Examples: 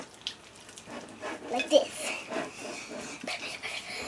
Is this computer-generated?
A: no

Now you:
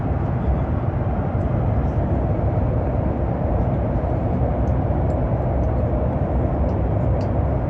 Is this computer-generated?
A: no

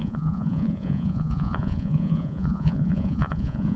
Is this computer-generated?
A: yes